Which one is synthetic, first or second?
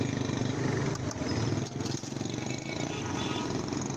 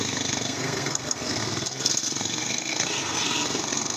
second